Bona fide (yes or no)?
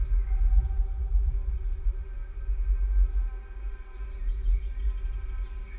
yes